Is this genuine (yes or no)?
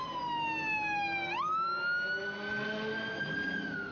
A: yes